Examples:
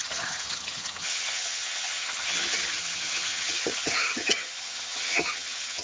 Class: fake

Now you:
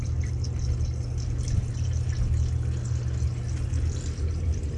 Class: real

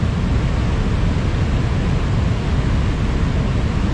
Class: real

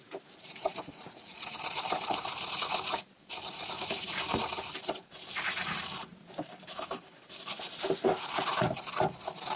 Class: fake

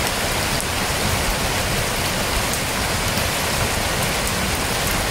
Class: real